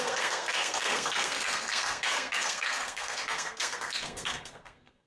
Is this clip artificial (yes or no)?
yes